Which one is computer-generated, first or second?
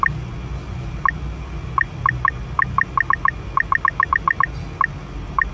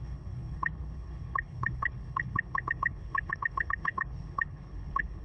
second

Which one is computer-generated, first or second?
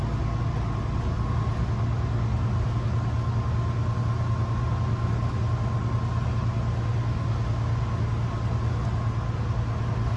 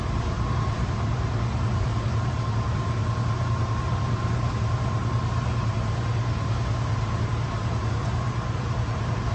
second